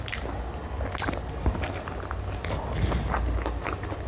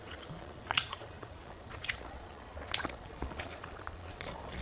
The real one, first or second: first